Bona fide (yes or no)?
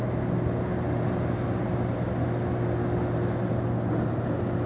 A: yes